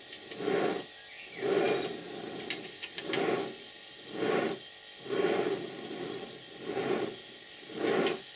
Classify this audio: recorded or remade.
recorded